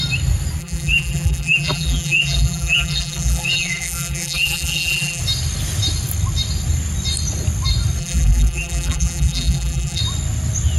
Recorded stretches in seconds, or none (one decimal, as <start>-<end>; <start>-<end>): 0.0-0.6; 5.2-8.0; 10.0-10.8